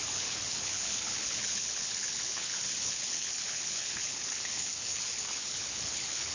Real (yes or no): no